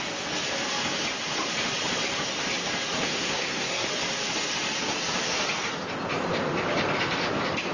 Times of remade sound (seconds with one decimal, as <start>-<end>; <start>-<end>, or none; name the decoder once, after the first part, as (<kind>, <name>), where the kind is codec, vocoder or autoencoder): 3.0-3.9 (codec, SNAC)